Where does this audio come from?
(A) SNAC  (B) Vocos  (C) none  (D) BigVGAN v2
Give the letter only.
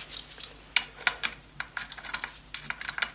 C